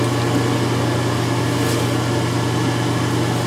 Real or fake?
real